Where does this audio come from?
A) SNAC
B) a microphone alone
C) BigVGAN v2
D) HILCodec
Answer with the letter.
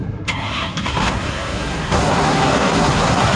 A